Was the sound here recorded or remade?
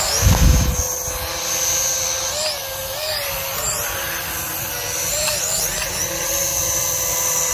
recorded